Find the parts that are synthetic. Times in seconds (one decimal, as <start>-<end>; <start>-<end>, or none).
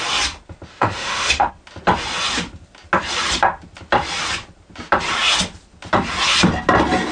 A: 0.7-1.5